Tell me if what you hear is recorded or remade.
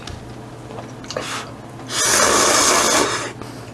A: recorded